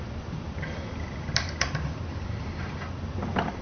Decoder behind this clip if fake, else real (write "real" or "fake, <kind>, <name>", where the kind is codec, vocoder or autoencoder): fake, vocoder, BigVGAN v2